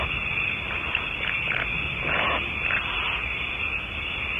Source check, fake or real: real